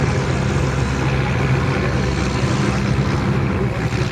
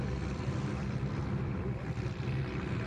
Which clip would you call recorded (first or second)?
first